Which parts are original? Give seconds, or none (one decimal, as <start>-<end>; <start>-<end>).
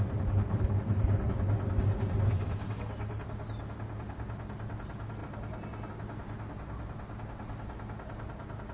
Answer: 0.0-8.7